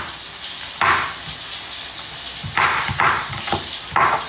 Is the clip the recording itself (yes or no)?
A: yes